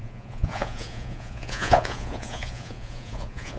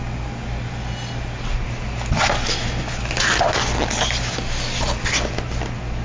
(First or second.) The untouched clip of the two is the second